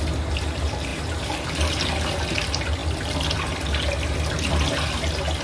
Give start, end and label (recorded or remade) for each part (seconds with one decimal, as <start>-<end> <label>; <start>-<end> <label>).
0.0-0.9 recorded; 0.9-1.5 remade; 1.5-5.4 recorded